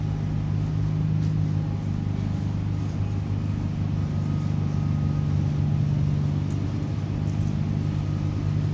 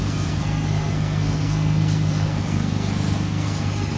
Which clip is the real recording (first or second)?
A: first